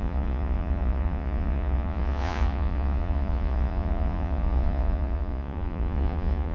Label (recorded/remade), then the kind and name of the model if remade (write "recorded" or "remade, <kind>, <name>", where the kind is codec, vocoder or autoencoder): remade, vocoder, Vocos